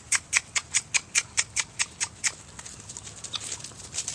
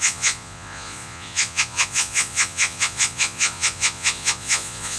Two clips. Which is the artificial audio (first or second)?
second